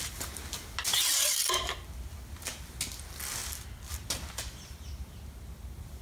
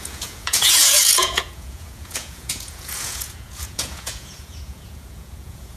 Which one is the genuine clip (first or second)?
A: first